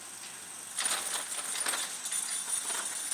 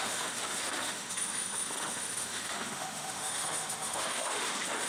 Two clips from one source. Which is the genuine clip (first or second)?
first